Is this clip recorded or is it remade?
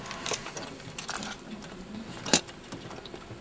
recorded